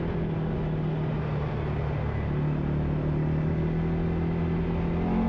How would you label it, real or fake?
real